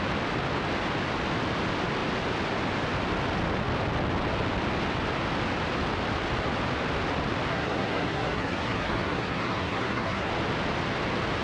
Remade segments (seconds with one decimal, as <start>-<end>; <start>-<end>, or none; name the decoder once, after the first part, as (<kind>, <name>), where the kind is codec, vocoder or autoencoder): 7.5-10.3 (codec, SNAC)